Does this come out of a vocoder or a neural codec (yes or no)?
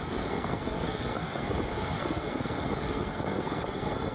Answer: yes